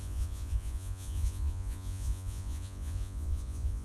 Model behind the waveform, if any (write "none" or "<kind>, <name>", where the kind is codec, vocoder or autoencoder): vocoder, Vocos